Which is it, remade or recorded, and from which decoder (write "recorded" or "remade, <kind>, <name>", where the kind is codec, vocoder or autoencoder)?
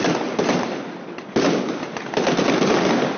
recorded